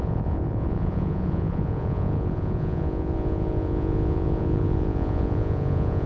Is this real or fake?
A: fake